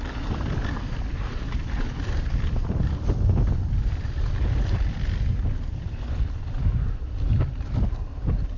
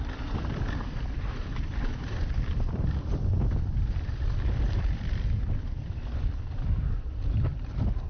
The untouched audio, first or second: first